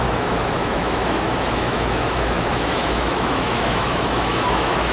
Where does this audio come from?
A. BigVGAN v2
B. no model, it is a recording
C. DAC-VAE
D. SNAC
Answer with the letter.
C